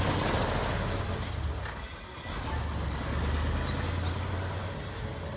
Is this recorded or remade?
recorded